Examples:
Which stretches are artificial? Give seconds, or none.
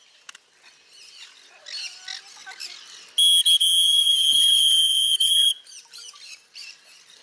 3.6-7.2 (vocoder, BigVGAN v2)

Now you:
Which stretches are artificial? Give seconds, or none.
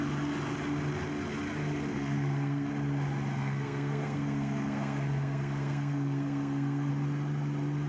1.9-2.7 (codec, SNAC); 3.3-6.9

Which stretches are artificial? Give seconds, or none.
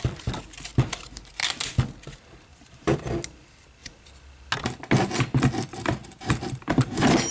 0.7-1.3 (vocoder, BigVGAN v2); 2.5-3.1; 6.0-7.3